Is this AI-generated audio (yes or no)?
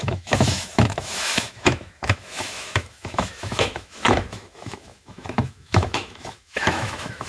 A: yes